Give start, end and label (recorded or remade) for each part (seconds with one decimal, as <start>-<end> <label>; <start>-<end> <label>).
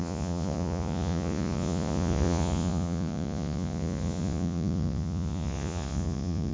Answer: 0.0-6.5 remade